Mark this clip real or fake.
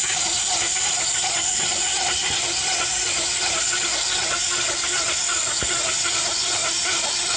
real